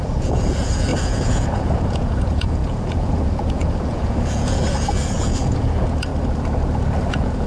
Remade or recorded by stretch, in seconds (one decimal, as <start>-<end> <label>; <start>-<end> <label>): 0.0-6.1 remade; 6.1-7.1 recorded; 7.1-7.5 remade